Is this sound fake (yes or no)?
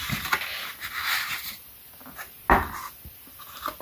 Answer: no